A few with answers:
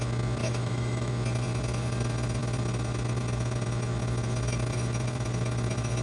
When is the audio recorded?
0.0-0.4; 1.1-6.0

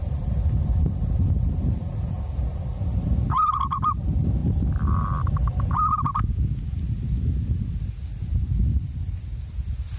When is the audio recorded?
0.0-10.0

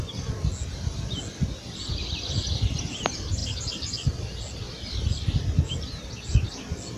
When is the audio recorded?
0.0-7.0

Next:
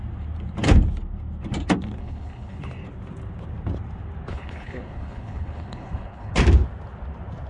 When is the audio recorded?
0.0-2.0; 2.6-4.3; 6.3-7.5

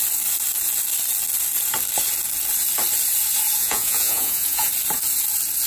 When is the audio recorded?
0.0-3.6; 4.7-5.7